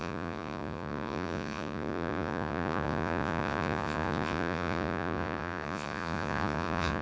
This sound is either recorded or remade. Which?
remade